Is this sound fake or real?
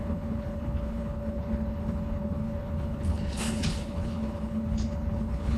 fake